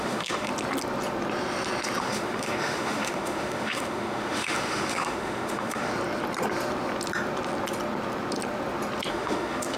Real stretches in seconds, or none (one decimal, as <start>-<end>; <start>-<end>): 0.5-2.0; 5.9-9.1